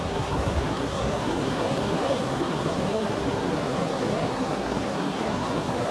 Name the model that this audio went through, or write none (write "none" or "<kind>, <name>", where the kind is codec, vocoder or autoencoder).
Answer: codec, SNAC